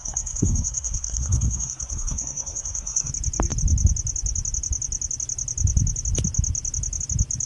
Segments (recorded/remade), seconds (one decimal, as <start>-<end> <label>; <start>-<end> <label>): 0.0-3.1 remade; 3.1-7.5 recorded